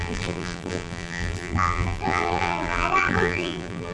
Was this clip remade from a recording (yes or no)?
yes